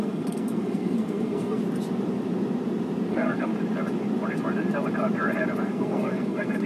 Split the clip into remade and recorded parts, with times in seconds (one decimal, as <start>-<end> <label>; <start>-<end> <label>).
0.0-1.6 remade; 1.6-3.1 recorded; 3.1-3.5 remade; 3.5-5.6 recorded; 5.6-6.7 remade